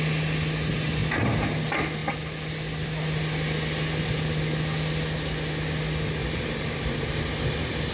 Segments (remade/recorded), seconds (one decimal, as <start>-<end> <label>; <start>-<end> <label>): 0.0-6.2 recorded; 6.2-7.1 remade; 7.1-7.9 recorded